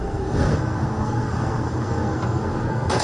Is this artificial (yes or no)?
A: yes